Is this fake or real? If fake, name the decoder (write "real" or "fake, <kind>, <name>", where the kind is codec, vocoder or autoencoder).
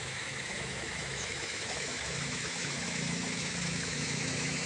fake, autoencoder, DAC-VAE